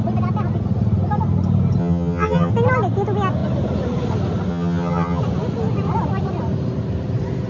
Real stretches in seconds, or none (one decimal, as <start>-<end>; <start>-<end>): 0.0-1.8; 2.5-4.5; 5.2-7.5